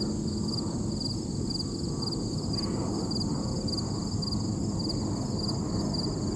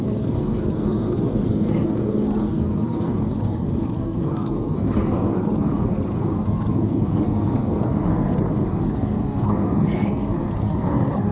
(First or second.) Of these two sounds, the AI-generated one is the second